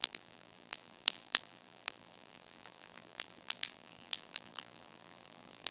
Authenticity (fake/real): fake